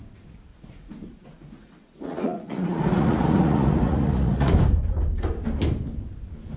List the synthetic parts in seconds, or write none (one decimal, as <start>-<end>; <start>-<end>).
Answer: 0.5-4.5